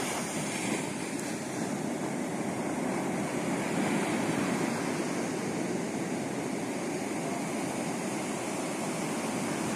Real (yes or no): yes